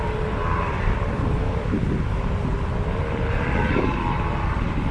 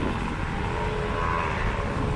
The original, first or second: second